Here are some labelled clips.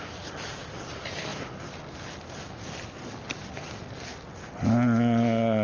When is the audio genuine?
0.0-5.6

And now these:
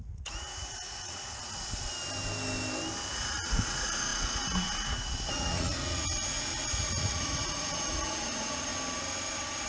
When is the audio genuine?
1.8-3.1; 8.7-9.7

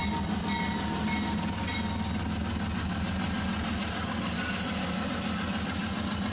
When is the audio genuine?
0.0-6.3

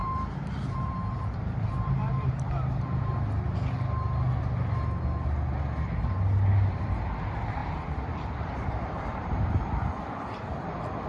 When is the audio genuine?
3.0-7.6; 9.7-11.1